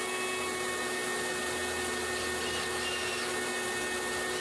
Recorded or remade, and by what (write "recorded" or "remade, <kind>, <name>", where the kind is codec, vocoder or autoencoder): recorded